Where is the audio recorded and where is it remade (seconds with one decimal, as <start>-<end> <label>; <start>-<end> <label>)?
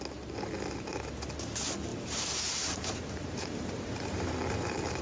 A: 0.0-1.9 recorded; 1.9-4.3 remade; 4.3-5.0 recorded